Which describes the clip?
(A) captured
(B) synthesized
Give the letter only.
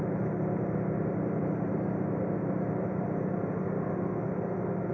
A